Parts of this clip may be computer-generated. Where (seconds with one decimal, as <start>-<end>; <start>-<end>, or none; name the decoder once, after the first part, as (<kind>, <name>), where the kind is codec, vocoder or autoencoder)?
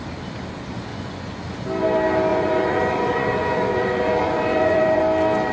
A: 0.9-1.4 (vocoder, Vocos); 2.3-5.0